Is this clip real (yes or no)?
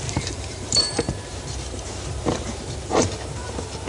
no